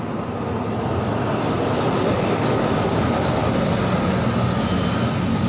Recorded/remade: recorded